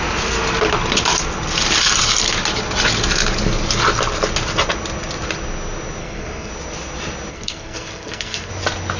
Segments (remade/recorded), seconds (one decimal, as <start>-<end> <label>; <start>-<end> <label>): 0.0-6.0 recorded; 6.0-6.5 remade; 6.5-7.3 recorded; 7.3-8.5 remade; 8.5-9.0 recorded